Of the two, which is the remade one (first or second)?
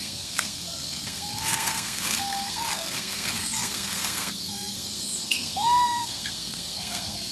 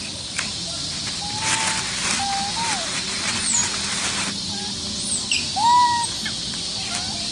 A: first